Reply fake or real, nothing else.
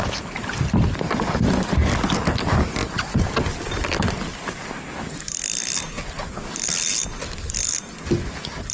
real